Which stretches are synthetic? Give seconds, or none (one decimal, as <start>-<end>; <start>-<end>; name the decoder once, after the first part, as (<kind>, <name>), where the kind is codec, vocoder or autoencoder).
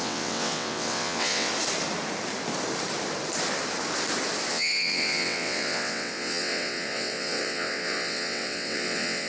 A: 0.0-1.5 (vocoder, WaveNeXt); 4.5-9.3